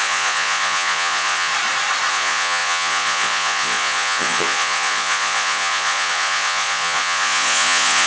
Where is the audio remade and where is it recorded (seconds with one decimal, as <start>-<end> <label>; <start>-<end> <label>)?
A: 0.0-1.5 remade; 1.5-2.1 recorded; 2.1-8.1 remade